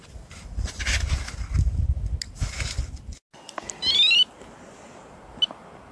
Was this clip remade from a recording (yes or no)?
no